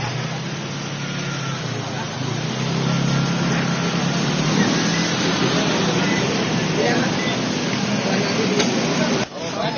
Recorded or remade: recorded